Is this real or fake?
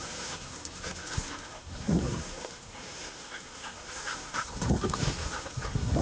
fake